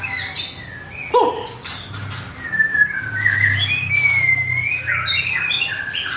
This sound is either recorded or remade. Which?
recorded